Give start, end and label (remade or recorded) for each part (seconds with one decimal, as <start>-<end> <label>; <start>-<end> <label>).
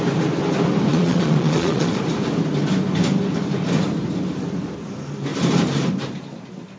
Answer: 0.0-0.9 recorded; 0.9-2.0 remade; 2.0-6.8 recorded